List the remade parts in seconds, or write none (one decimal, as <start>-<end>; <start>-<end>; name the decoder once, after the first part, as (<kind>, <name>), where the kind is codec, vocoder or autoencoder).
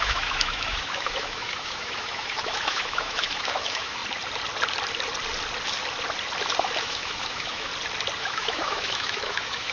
0.0-4.0 (autoencoder, DAC-VAE); 6.8-7.7; 8.2-9.7